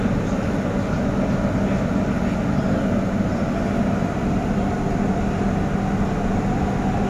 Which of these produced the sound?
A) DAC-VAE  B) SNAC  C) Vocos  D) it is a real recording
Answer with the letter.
D